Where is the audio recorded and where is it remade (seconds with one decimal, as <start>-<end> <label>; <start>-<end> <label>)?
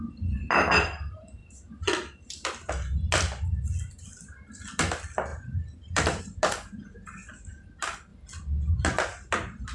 0.0-5.3 recorded; 5.3-6.2 remade; 6.2-9.7 recorded